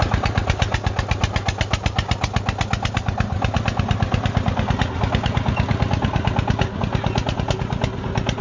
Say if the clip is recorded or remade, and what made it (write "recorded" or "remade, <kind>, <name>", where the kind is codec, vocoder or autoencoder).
recorded